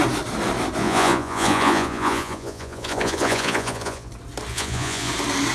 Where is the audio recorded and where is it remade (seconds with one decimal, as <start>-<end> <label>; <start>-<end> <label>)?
0.0-0.8 recorded; 0.8-4.1 remade; 4.1-4.5 recorded; 4.5-5.1 remade; 5.1-5.5 recorded